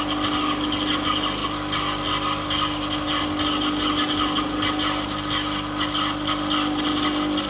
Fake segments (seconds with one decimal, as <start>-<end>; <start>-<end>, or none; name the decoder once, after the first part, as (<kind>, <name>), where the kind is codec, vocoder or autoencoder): none